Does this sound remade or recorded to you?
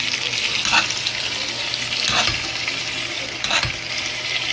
recorded